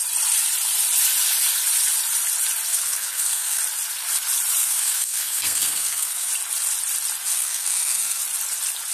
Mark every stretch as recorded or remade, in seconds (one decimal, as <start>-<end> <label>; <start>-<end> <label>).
0.0-2.7 recorded; 2.7-3.6 remade; 3.6-4.6 recorded; 4.6-6.3 remade; 6.3-7.3 recorded; 7.3-8.2 remade; 8.2-8.9 recorded

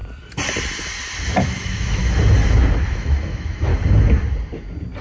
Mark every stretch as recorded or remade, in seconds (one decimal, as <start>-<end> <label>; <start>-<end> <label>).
0.0-1.4 recorded; 1.4-2.0 remade; 2.0-2.8 recorded; 2.8-3.7 remade; 3.7-5.0 recorded

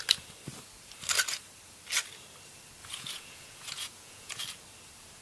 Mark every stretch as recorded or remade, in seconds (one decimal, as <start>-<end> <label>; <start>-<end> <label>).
0.0-2.8 recorded; 2.8-4.4 remade; 4.4-5.2 recorded

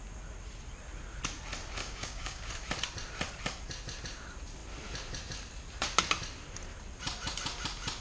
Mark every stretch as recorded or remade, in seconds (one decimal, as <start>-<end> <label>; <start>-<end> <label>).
0.0-1.8 recorded; 1.8-2.5 remade; 2.5-8.0 recorded

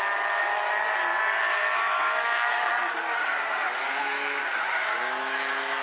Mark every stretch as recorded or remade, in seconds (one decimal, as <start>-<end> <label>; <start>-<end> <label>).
0.0-0.8 remade; 0.8-1.4 recorded; 1.4-2.7 remade; 2.7-3.6 recorded; 3.6-4.4 remade; 4.4-5.2 recorded; 5.2-5.8 remade